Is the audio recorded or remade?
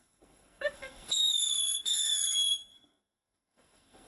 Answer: remade